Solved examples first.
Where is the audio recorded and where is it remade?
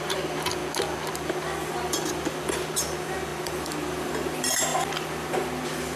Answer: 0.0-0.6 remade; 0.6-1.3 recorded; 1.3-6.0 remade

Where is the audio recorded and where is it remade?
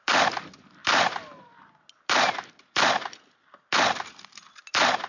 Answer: 0.0-5.1 recorded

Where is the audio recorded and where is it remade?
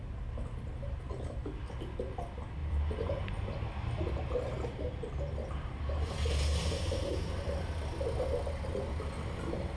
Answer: 0.0-0.7 recorded; 0.7-1.6 remade; 1.6-2.6 recorded; 2.6-3.2 remade; 3.2-9.8 recorded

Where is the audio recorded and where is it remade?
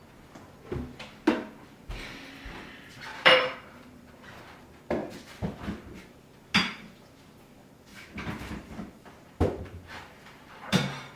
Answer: 0.0-3.1 recorded; 3.1-4.0 remade; 4.0-7.9 recorded; 7.9-11.2 remade